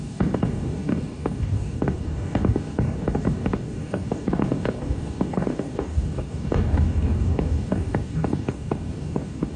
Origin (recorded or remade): remade